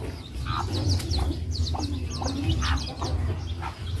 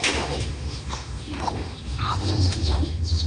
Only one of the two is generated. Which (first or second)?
second